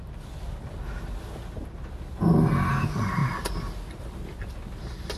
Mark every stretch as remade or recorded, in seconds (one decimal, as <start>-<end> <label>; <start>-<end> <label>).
0.0-5.2 recorded